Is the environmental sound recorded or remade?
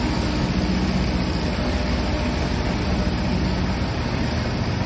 recorded